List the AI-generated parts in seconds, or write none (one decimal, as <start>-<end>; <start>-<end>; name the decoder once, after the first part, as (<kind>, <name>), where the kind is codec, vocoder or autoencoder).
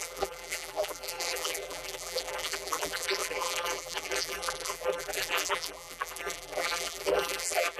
0.0-7.8 (vocoder, BigVGAN v2)